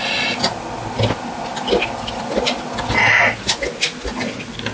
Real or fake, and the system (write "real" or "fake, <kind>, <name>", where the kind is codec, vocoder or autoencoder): real